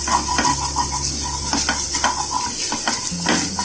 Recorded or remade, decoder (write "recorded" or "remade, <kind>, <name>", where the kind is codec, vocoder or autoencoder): recorded